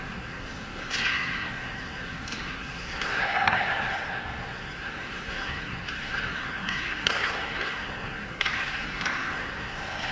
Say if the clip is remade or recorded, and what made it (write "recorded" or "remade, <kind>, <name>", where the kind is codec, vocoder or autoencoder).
remade, codec, SNAC